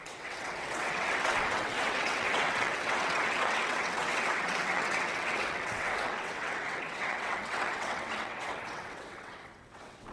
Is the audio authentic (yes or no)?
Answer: no